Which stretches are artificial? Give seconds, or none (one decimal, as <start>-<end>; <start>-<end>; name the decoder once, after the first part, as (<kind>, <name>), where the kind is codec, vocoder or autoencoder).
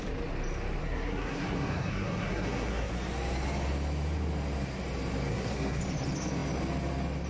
0.8-2.9 (codec, SNAC); 5.3-5.8